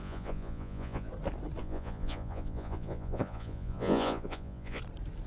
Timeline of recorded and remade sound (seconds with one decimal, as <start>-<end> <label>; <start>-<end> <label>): 0.0-1.1 remade; 1.1-1.6 recorded; 1.6-4.8 remade; 4.8-5.3 recorded